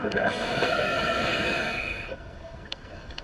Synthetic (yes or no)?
yes